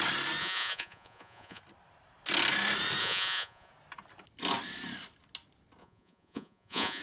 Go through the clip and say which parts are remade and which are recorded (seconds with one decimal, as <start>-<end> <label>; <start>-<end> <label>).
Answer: 0.0-0.4 recorded; 0.4-1.6 remade; 1.6-3.0 recorded; 3.0-3.7 remade; 3.7-5.8 recorded; 5.8-7.0 remade